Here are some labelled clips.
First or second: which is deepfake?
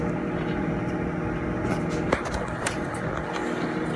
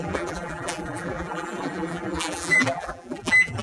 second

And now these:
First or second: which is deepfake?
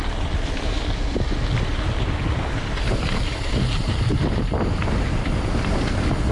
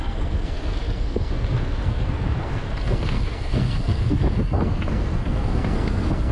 second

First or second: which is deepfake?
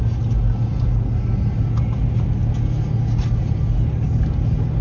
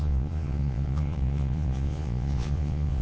second